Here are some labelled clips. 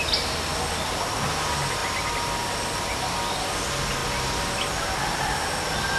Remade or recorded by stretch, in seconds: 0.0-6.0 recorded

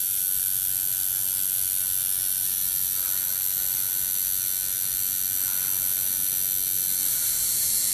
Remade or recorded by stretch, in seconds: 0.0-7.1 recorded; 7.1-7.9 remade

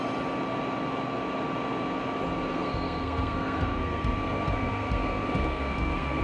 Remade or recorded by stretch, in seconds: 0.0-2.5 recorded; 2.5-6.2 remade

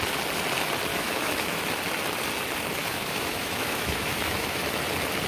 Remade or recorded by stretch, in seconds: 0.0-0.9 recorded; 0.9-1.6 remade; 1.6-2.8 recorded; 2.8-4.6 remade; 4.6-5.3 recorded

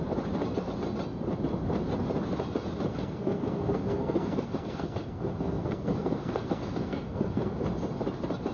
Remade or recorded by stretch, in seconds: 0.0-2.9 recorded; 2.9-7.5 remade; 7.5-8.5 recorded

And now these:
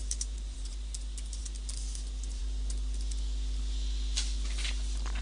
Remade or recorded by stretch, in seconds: 0.0-1.4 remade; 1.4-5.2 recorded